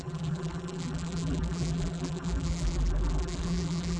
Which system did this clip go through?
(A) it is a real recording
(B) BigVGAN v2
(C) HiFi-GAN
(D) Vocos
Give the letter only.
B